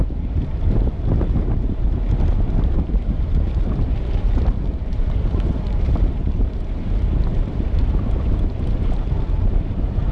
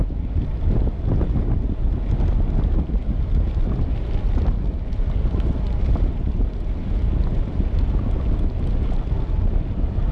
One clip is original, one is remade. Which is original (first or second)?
second